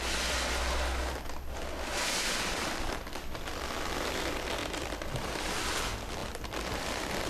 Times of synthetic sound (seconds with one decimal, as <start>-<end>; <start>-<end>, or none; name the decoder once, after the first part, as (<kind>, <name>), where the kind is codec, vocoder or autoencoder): 1.9-2.9 (vocoder, BigVGAN v2); 4.6-5.4; 6.2-7.3